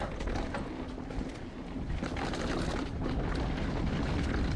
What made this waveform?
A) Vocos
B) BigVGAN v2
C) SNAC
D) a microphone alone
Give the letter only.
D